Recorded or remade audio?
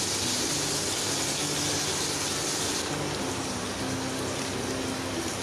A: recorded